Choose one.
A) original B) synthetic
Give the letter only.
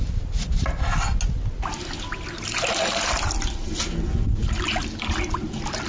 A